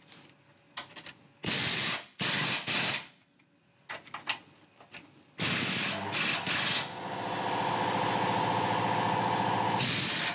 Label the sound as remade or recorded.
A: recorded